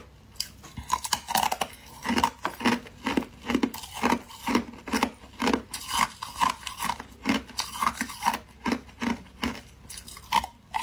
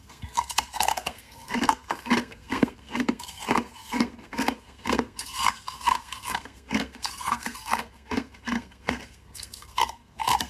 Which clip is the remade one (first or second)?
second